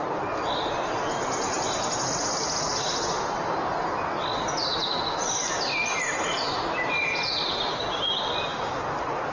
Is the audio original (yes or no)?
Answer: yes